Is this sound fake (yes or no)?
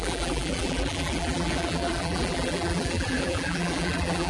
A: yes